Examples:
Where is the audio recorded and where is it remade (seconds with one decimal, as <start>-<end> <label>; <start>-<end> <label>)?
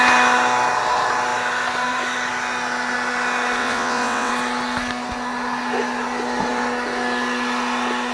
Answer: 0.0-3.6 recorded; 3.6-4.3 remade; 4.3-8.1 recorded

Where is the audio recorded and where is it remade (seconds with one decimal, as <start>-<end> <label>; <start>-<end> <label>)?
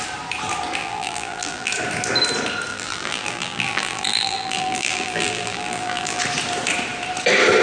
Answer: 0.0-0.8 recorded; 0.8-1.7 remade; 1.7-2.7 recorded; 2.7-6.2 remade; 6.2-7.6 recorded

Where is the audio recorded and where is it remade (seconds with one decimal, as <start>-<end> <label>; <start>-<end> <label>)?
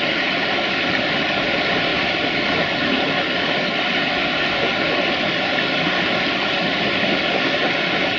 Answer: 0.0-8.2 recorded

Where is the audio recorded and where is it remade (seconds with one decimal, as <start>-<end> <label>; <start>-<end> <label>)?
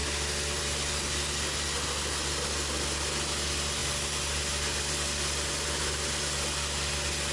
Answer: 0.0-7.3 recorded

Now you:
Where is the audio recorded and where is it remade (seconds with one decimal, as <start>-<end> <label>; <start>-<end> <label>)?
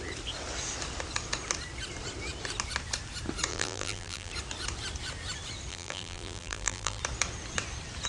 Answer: 0.0-3.5 recorded; 3.5-4.3 remade; 4.3-5.7 recorded; 5.7-7.0 remade; 7.0-8.1 recorded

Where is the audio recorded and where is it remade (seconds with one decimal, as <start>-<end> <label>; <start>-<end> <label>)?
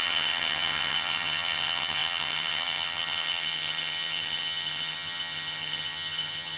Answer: 0.0-6.6 remade